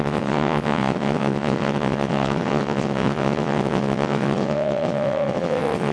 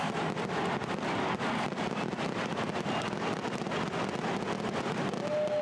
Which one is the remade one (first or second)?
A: first